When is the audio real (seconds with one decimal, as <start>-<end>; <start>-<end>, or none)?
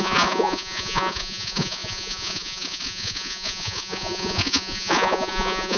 none